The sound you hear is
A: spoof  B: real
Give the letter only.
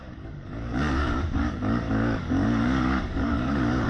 A